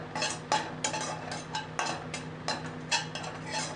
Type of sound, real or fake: real